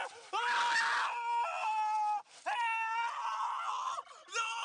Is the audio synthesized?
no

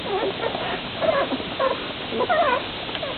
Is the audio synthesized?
no